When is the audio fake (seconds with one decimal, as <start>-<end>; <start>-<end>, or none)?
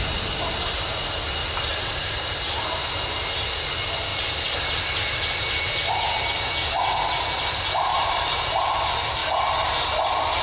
1.4-2.3; 4.1-5.9; 7.9-8.7